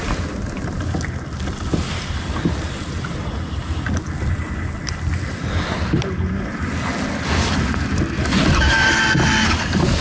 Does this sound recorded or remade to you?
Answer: recorded